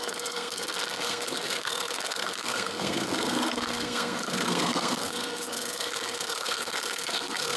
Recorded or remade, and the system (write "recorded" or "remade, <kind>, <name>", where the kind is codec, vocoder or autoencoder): remade, codec, SNAC